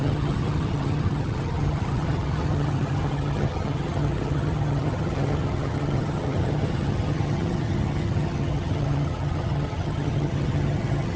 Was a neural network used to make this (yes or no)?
yes